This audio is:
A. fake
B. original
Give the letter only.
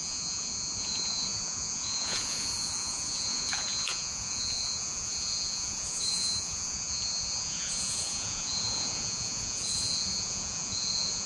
A